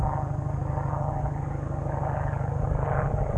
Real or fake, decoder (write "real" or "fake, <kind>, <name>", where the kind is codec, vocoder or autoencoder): real